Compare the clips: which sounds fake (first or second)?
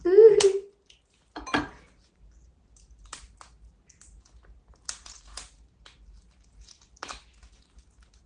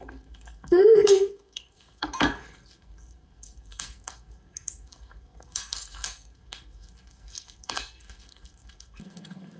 second